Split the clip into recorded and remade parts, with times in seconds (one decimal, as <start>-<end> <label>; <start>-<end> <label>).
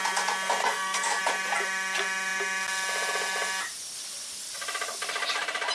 0.0-0.6 recorded; 0.6-1.2 remade; 1.2-5.7 recorded